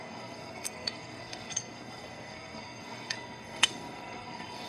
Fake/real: fake